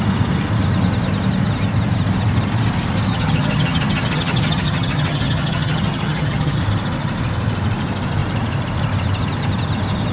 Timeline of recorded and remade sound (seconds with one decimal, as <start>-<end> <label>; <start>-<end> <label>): 0.0-3.1 recorded; 3.1-6.6 remade; 6.6-10.1 recorded